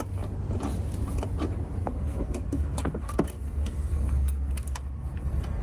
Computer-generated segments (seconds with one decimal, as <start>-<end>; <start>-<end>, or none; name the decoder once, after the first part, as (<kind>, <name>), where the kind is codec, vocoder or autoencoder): 1.8-5.6 (codec, SNAC)